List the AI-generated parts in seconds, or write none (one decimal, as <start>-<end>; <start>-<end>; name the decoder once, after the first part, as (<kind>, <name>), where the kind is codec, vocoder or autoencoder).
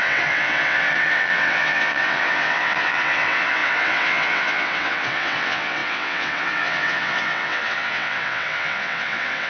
0.0-9.5 (vocoder, WaveNeXt)